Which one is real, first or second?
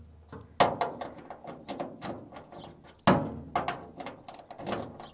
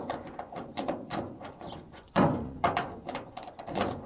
first